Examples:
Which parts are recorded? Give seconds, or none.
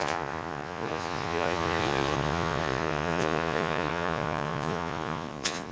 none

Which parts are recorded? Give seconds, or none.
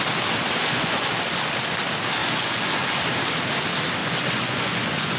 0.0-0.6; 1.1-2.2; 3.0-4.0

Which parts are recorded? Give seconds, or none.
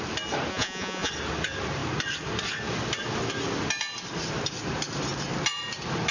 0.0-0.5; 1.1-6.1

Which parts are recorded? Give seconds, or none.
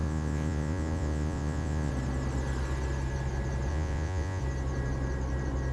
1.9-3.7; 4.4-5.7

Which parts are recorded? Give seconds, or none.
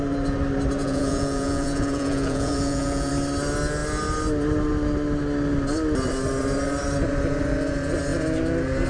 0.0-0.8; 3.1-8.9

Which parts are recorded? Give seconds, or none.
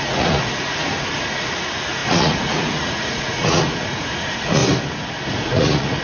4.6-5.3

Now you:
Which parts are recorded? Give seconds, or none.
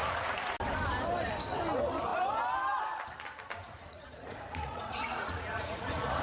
0.5-3.6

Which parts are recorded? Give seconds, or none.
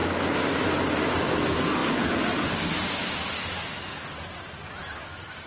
0.0-5.5